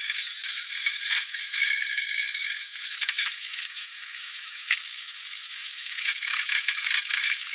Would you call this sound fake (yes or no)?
yes